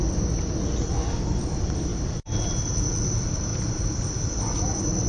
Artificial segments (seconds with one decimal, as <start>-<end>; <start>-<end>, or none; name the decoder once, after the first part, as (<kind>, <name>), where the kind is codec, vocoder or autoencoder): 0.0-5.1 (vocoder, BigVGAN v2)